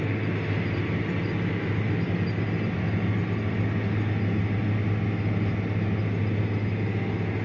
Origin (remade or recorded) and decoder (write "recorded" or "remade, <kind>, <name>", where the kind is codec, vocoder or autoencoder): recorded